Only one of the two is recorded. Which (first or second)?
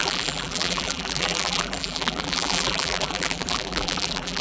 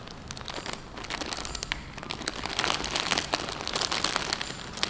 second